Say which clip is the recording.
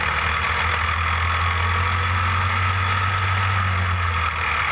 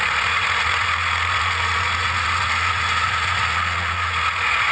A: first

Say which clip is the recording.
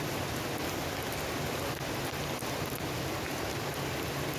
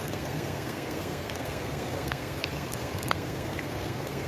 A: first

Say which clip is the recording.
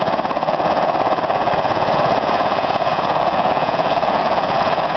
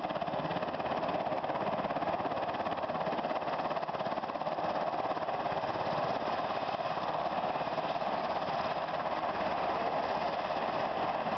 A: second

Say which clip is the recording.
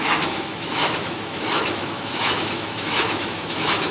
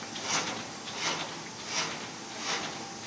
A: second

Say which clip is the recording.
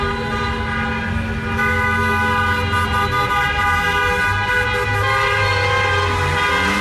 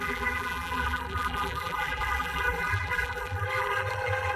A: first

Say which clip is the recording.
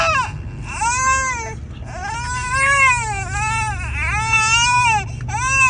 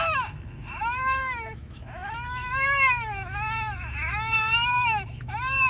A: first